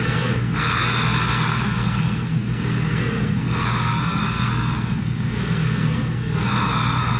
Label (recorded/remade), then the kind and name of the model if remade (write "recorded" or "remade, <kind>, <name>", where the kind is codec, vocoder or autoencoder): remade, codec, SNAC